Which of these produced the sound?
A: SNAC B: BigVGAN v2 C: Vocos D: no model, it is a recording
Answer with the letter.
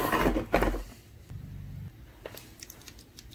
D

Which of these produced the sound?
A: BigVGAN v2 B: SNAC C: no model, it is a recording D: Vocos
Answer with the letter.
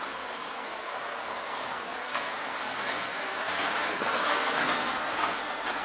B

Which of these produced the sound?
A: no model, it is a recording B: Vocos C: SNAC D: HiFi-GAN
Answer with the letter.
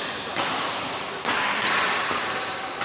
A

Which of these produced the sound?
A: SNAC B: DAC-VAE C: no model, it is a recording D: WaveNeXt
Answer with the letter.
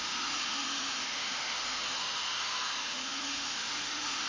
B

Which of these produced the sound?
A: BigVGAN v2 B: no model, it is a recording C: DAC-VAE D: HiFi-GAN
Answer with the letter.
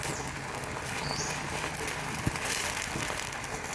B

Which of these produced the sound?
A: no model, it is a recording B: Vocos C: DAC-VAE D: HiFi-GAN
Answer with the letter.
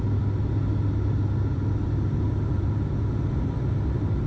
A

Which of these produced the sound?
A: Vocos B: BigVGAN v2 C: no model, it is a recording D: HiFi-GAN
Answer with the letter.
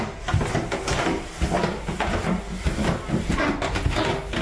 C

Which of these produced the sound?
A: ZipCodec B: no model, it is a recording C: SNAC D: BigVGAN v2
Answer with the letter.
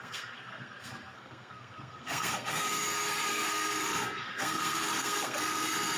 C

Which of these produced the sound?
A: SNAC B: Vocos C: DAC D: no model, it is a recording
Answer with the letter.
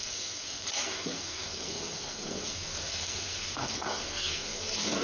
A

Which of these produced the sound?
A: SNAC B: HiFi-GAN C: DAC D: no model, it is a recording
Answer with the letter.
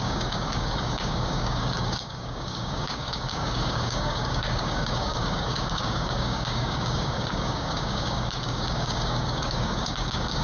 C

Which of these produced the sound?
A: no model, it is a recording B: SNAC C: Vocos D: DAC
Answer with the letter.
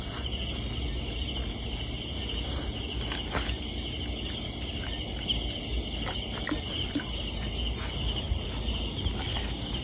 A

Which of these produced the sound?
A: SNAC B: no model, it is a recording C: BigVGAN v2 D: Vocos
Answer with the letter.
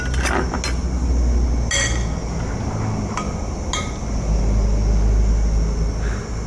B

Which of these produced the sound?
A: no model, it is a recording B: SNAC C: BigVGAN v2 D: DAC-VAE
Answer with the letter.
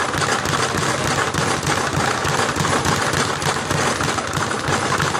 A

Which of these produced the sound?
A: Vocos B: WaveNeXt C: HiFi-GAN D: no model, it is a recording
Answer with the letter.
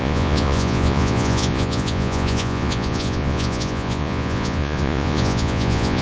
A